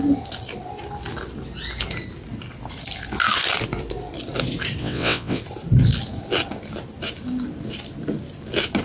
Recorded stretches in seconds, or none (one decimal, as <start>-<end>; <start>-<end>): 0.0-4.8; 5.4-8.8